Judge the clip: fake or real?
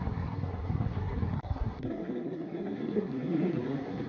fake